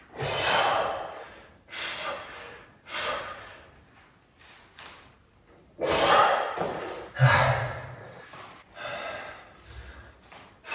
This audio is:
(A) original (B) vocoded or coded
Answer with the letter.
A